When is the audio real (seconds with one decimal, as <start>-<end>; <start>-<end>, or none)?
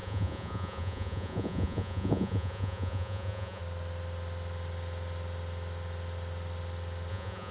3.6-7.1